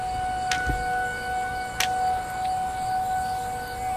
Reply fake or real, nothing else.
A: real